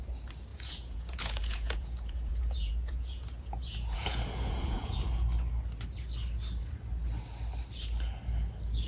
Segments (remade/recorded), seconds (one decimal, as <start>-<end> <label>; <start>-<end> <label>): 0.0-0.5 recorded; 0.5-5.0 remade; 5.0-8.9 recorded

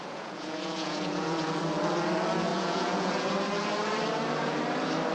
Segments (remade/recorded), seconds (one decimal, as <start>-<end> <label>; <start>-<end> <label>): 0.0-1.5 remade; 1.5-2.5 recorded; 2.5-3.3 remade; 3.3-5.1 recorded

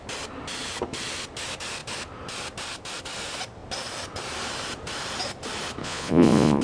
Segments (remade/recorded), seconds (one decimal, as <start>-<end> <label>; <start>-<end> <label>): 0.0-5.8 recorded; 5.8-6.6 remade